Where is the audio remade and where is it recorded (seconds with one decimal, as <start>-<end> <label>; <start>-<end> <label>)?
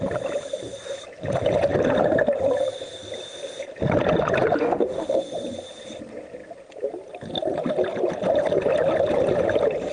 0.0-4.6 recorded; 4.6-5.2 remade; 5.2-9.9 recorded